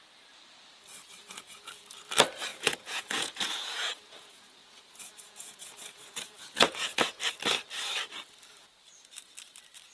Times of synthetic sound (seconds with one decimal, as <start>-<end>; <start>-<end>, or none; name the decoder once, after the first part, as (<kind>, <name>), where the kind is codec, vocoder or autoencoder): 1.2-1.7 (vocoder, Vocos); 2.5-7.2